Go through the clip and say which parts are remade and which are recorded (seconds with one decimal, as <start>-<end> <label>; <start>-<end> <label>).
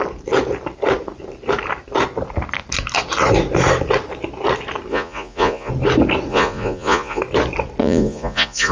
0.0-4.9 recorded; 4.9-5.7 remade; 5.7-6.3 recorded; 6.3-7.2 remade; 7.2-7.8 recorded; 7.8-8.7 remade